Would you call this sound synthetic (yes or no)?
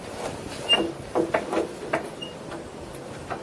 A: no